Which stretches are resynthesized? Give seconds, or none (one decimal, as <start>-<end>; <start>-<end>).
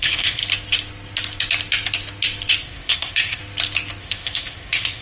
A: 0.0-0.4; 2.6-3.4; 4.0-5.0